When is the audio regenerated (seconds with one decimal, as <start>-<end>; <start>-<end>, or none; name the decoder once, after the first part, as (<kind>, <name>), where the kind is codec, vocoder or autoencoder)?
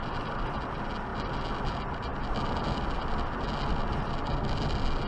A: none